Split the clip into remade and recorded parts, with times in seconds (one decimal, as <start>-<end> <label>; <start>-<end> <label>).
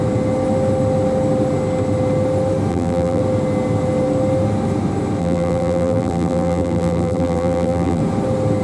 0.0-2.7 recorded; 2.7-3.2 remade; 3.2-5.2 recorded; 5.2-8.0 remade; 8.0-8.6 recorded